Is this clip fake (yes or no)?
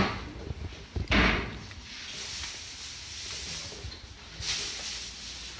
no